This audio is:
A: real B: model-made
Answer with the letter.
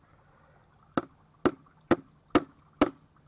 A